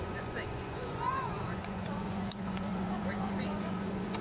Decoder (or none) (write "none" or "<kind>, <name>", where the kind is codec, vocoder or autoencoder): vocoder, Vocos